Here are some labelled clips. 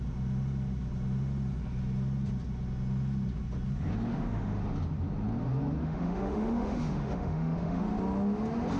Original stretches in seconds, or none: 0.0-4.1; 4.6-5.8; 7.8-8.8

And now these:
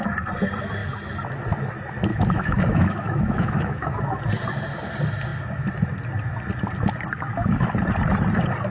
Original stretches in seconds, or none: 0.0-2.1; 4.0-8.7

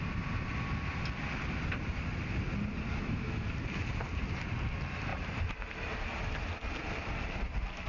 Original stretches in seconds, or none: 0.0-2.9; 3.4-7.9

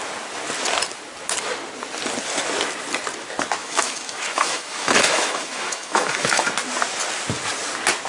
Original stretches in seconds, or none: 0.0-3.6; 6.5-8.1

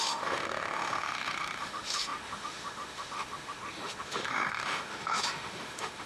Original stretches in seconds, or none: none

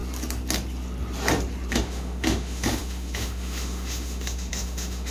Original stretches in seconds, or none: 0.0-1.7

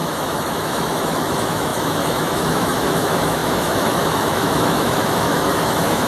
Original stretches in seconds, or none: none

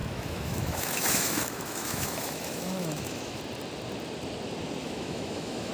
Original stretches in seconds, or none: 3.4-4.8